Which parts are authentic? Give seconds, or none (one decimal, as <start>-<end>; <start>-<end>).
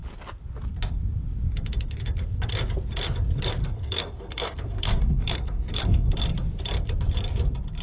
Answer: 0.0-3.6; 6.1-7.8